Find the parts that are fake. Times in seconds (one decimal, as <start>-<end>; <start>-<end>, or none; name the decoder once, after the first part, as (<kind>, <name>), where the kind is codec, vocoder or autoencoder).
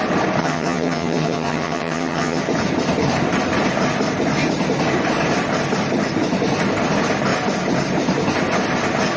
0.4-2.4 (vocoder, HiFi-GAN)